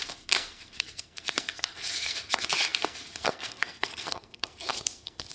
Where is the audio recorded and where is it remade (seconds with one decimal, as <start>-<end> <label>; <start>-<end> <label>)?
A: 0.0-5.3 remade